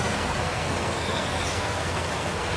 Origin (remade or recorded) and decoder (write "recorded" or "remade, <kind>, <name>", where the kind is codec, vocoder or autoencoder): remade, codec, SNAC